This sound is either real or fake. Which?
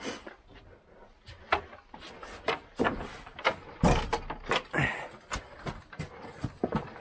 real